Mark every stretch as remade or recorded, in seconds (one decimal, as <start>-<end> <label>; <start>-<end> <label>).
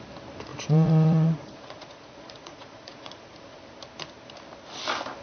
0.0-0.5 recorded; 0.5-3.6 remade; 3.6-5.2 recorded